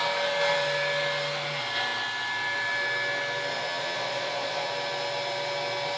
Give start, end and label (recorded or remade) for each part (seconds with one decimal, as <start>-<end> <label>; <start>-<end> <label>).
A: 0.0-3.5 recorded; 3.5-4.7 remade; 4.7-6.0 recorded